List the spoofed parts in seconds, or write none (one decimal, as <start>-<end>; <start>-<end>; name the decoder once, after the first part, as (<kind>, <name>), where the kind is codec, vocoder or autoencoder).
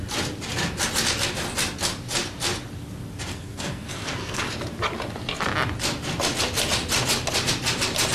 3.3-4.4 (codec, SNAC)